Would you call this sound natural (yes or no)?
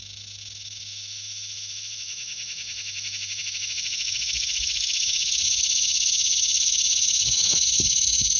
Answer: no